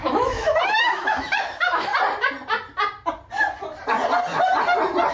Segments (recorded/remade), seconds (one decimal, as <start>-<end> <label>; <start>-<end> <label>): 0.0-1.9 remade; 1.9-5.1 recorded